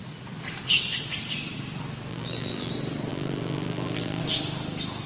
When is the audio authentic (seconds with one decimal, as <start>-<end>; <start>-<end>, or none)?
0.0-2.1; 2.7-3.1; 4.2-5.1